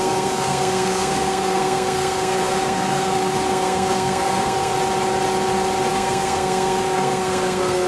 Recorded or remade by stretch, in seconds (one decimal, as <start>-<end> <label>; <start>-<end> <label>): 0.0-4.7 remade; 4.7-5.9 recorded; 5.9-7.9 remade